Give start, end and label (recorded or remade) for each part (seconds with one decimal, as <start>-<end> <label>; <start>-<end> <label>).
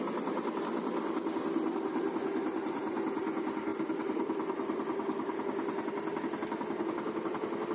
0.0-7.7 recorded